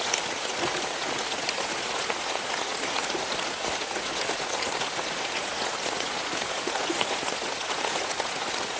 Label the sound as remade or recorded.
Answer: remade